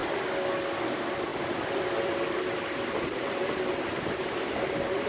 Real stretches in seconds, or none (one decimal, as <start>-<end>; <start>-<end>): 0.0-1.3; 4.4-5.1